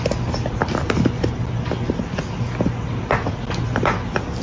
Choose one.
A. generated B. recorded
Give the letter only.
B